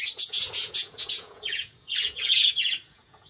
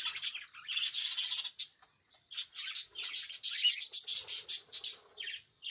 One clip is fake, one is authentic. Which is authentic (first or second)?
second